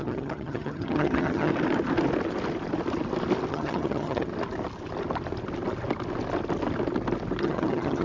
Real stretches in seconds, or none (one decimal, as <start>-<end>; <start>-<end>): 1.5-3.5; 4.3-7.4